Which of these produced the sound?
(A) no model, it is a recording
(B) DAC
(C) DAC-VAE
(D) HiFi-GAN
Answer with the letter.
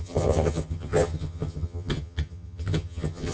D